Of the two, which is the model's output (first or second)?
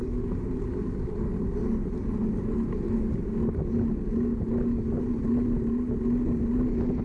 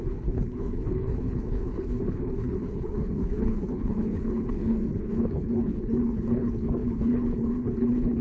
second